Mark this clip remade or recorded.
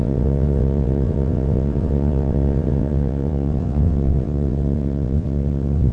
remade